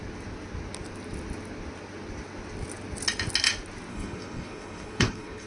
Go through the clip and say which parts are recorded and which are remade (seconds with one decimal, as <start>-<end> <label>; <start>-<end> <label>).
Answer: 0.0-3.9 recorded; 3.9-5.5 remade